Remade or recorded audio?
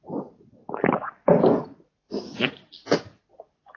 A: recorded